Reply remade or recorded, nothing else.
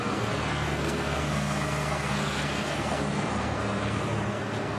remade